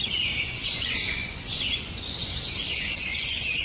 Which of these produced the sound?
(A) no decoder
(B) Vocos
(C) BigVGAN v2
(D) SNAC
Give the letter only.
B